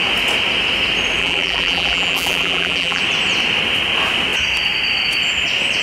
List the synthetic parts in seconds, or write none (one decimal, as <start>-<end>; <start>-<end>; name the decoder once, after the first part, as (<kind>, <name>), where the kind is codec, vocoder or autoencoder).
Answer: 1.2-3.0 (vocoder, BigVGAN v2)